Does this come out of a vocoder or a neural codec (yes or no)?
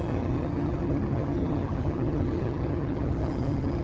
yes